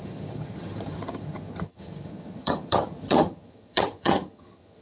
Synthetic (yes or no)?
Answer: yes